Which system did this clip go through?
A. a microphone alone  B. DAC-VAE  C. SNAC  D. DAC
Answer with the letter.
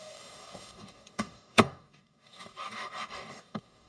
D